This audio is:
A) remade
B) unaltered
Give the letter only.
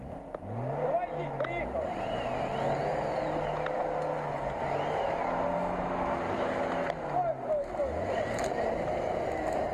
B